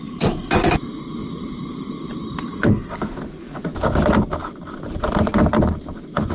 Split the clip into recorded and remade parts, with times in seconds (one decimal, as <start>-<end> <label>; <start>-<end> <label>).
0.0-1.2 recorded; 1.2-3.2 remade; 3.2-3.7 recorded; 3.7-4.6 remade; 4.6-6.3 recorded